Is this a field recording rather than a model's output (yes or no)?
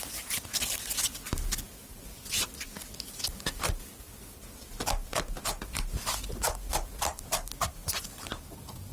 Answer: yes